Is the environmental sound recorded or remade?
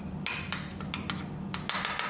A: recorded